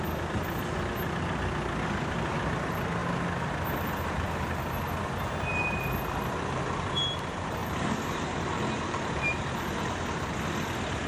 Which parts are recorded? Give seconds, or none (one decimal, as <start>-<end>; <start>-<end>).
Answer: 0.0-7.6; 10.3-11.1